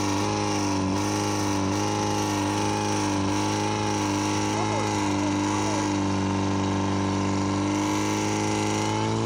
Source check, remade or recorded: recorded